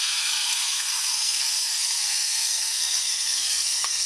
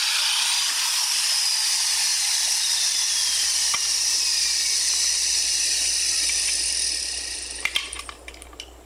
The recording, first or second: second